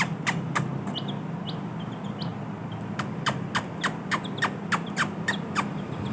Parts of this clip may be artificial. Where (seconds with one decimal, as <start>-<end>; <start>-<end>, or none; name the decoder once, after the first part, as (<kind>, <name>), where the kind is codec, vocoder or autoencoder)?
none